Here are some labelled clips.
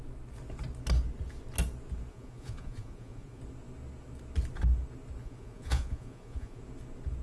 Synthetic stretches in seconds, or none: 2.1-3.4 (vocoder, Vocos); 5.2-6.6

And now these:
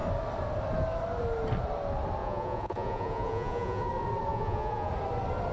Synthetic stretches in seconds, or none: 2.2-3.9 (vocoder, Vocos); 4.3-4.9

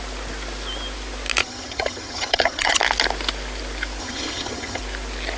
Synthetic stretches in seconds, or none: 1.4-2.8 (vocoder, HiFi-GAN); 4.0-4.8

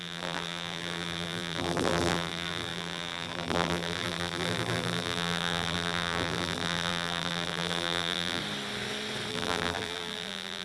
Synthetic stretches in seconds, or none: 0.0-8.4 (vocoder, BigVGAN v2); 9.3-10.6